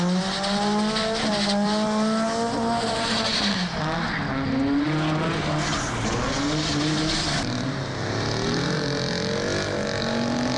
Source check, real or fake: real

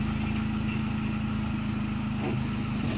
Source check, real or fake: real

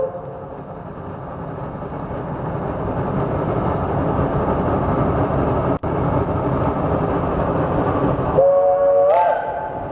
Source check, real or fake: real